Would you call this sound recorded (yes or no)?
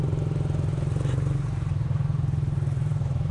no